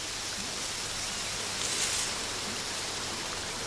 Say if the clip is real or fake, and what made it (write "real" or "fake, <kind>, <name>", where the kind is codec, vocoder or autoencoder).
real